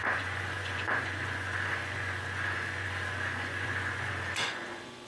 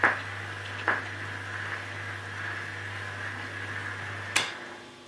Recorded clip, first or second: second